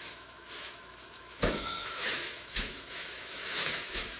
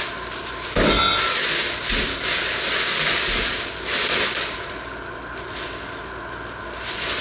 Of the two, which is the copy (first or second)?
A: first